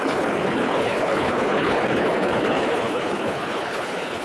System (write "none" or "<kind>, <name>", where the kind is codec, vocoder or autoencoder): codec, HILCodec